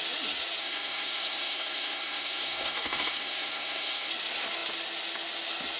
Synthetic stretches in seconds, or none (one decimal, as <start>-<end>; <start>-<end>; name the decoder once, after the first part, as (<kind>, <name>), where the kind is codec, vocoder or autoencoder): 0.6-4.1 (codec, SNAC)